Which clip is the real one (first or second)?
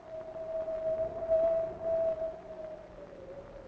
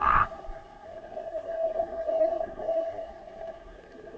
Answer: first